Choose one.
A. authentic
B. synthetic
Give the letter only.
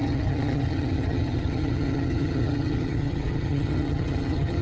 B